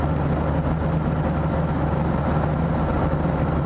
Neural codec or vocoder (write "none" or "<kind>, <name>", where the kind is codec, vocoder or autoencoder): none